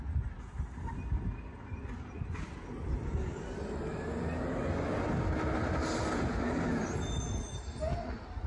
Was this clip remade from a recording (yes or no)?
no